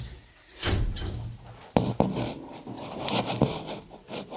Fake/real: real